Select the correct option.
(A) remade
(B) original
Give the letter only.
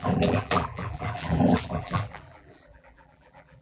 A